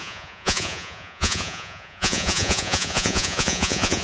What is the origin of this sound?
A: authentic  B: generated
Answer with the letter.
B